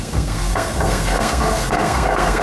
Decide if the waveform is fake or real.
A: fake